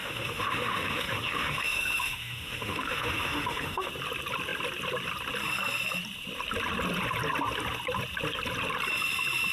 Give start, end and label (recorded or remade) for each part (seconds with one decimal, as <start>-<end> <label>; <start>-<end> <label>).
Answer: 0.0-3.9 remade; 3.9-9.5 recorded